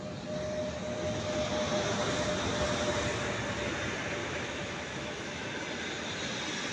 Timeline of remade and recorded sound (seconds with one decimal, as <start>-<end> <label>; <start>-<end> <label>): 0.0-4.2 recorded; 4.2-5.5 remade; 5.5-6.7 recorded